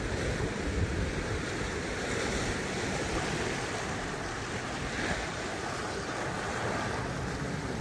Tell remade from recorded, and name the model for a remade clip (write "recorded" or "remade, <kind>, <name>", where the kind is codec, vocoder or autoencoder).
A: recorded